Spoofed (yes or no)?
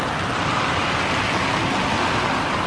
no